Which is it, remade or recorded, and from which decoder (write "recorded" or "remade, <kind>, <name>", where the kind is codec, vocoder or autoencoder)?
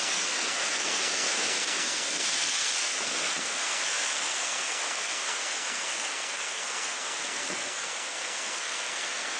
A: remade, codec, SNAC